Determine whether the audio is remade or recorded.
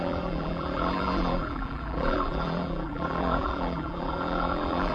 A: remade